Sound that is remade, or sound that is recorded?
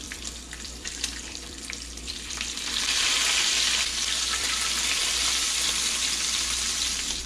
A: remade